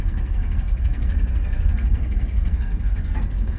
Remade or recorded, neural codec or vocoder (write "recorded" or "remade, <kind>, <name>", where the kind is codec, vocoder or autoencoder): remade, codec, SNAC